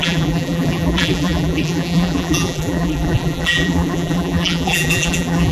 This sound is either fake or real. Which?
fake